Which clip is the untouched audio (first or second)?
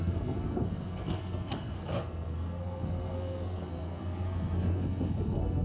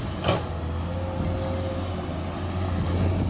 second